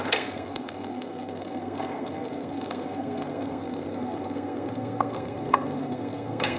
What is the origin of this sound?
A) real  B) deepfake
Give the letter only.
B